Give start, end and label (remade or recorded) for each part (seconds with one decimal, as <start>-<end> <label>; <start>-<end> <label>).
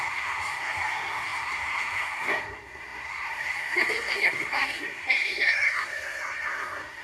0.0-7.0 remade